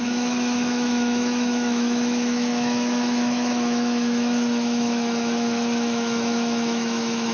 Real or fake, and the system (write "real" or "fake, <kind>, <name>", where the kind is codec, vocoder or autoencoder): fake, autoencoder, DAC-VAE